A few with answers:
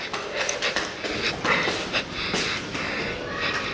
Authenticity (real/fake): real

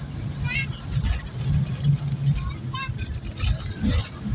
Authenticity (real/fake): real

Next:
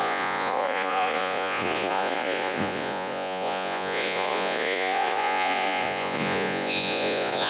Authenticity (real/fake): fake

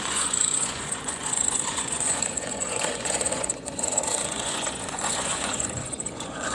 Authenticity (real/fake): fake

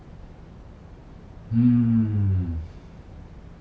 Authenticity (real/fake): real